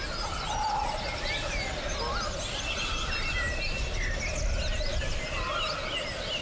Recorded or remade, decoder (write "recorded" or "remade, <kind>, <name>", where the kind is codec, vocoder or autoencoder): recorded